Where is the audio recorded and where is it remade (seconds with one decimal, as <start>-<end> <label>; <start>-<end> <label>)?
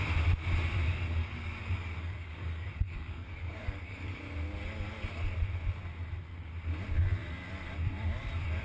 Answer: 0.0-1.2 recorded; 1.2-4.2 remade; 4.2-8.6 recorded